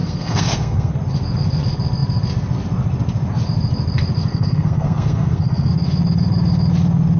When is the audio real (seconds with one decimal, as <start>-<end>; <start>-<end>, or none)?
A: 0.9-4.3; 5.7-7.2